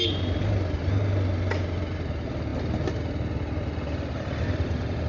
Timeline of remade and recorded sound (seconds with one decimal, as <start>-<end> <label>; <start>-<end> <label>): 0.0-5.1 recorded